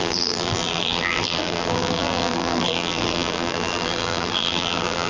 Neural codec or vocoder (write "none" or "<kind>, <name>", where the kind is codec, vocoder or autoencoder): vocoder, BigVGAN v2